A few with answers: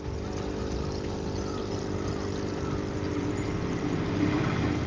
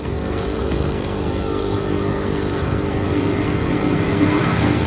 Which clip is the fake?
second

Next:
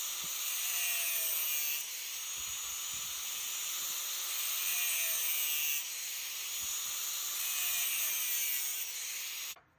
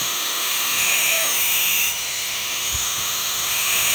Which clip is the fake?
second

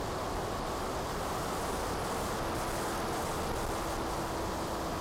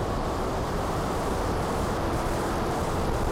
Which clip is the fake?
second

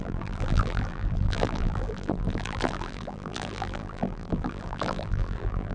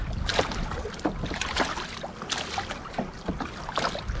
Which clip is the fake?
first